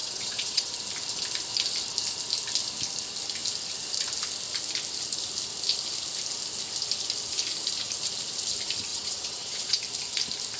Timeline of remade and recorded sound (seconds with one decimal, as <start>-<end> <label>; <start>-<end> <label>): 0.0-0.7 remade; 0.7-8.9 recorded; 8.9-9.8 remade; 9.8-10.6 recorded